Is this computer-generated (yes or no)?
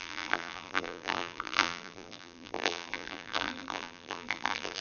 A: yes